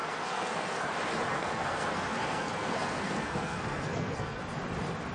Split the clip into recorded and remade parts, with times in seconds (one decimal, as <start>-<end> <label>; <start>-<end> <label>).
0.0-0.9 remade; 0.9-1.3 recorded; 1.3-4.4 remade; 4.4-5.1 recorded